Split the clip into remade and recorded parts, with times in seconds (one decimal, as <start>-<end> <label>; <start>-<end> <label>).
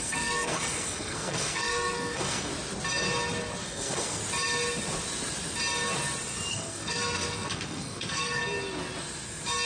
0.0-2.5 remade; 2.5-3.6 recorded; 3.6-4.2 remade; 4.2-6.5 recorded; 6.5-8.4 remade; 8.4-9.7 recorded